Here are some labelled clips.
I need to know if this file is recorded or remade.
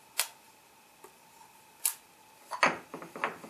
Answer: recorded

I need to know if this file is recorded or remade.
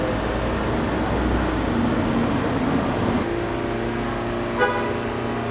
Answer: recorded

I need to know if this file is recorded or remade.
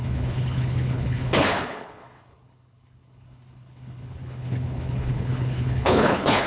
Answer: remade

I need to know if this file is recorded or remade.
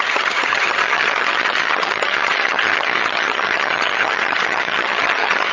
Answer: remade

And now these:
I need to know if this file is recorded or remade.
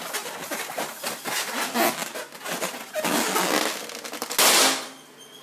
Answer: recorded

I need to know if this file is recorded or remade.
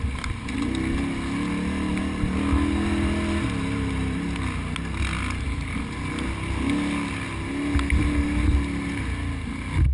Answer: recorded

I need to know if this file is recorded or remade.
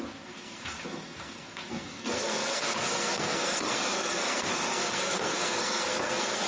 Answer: remade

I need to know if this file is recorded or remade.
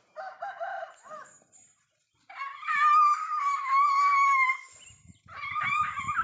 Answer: recorded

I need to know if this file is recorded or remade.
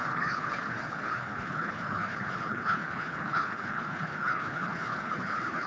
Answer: remade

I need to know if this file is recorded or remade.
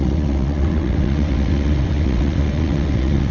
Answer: remade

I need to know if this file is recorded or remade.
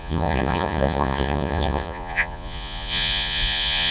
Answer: remade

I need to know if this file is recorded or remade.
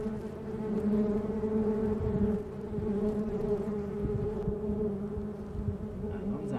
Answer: recorded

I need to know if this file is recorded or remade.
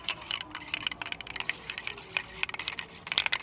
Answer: recorded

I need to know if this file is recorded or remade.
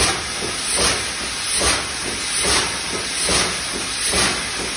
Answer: recorded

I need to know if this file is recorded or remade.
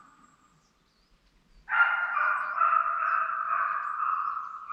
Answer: recorded